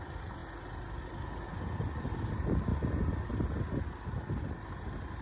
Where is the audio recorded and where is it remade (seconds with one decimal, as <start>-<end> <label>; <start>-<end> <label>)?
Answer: 0.0-5.2 recorded